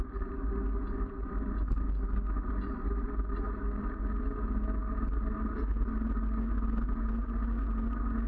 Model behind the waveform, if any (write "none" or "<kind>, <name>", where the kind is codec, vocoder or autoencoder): none